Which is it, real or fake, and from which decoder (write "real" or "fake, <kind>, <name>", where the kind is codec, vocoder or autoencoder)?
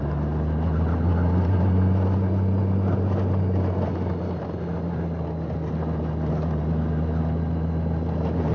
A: real